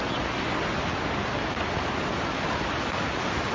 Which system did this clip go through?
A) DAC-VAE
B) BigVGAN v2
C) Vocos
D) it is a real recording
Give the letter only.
D